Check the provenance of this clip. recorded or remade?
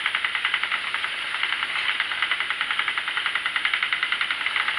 recorded